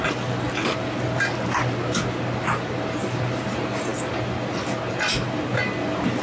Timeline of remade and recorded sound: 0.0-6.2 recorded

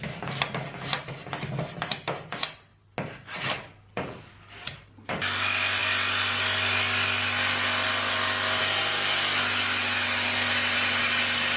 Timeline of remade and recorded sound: 0.0-11.6 recorded

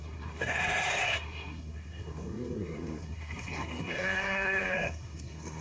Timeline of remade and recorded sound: 0.0-5.6 remade

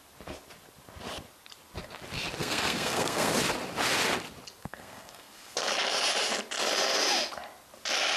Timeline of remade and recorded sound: 0.0-2.4 recorded; 2.4-3.3 remade; 3.3-4.6 recorded; 4.6-5.7 remade; 5.7-8.2 recorded